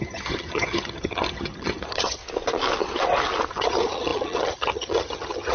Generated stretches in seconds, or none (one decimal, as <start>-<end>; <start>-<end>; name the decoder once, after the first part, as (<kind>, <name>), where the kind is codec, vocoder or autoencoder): 0.0-2.2 (vocoder, HiFi-GAN); 3.5-5.5